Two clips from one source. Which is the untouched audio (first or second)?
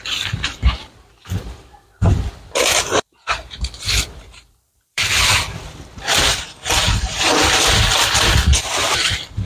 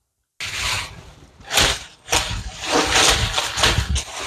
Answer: second